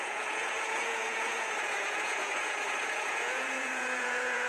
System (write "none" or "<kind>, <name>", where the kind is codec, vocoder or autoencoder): vocoder, Vocos